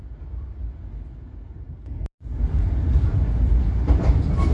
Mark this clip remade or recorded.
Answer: recorded